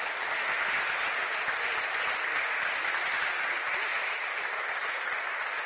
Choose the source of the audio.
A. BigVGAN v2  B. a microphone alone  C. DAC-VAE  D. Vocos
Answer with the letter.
B